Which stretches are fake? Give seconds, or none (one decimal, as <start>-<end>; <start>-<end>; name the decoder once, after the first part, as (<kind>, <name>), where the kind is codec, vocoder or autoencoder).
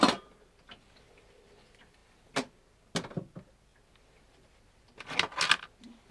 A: none